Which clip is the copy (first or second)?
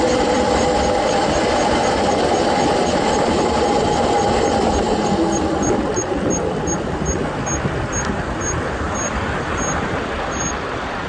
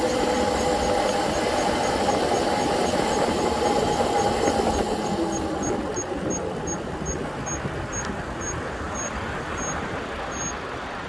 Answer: first